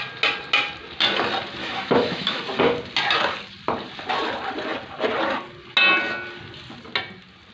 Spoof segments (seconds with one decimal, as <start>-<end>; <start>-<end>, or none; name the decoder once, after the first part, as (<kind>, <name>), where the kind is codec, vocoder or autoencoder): 1.6-2.4 (autoencoder, DAC-VAE)